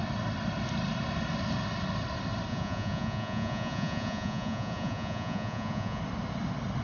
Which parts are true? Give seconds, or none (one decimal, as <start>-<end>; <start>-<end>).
0.0-2.5; 6.0-6.8